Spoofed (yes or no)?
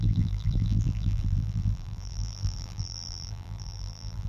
yes